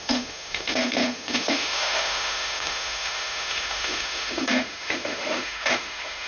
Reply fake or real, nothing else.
fake